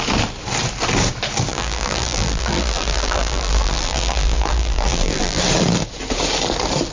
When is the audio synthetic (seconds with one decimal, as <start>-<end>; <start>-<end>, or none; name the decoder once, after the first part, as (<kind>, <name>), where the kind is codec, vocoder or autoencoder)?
1.5-5.4 (vocoder, BigVGAN v2)